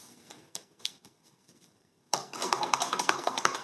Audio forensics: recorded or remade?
remade